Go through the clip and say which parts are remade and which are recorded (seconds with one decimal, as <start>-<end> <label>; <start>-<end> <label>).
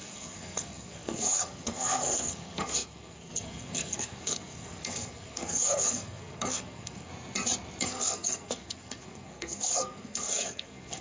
0.0-7.1 remade; 7.1-7.8 recorded; 7.8-11.0 remade